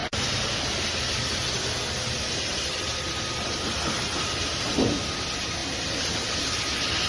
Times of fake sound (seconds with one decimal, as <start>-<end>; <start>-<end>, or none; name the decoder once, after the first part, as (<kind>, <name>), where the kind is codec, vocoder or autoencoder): none